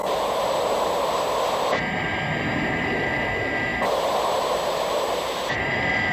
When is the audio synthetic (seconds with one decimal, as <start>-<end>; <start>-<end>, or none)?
none